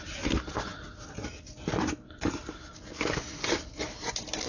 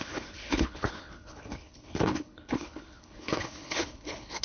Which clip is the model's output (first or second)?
second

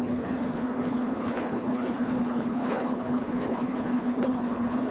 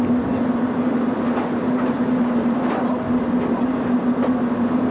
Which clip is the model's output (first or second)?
first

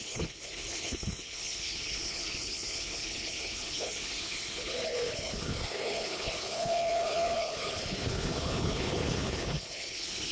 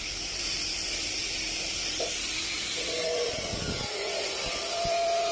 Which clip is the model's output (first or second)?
first